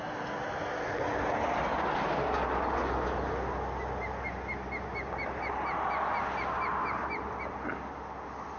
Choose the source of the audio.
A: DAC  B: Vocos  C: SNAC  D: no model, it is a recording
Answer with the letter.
D